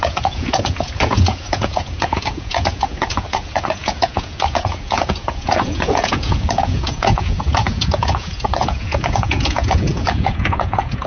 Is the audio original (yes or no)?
no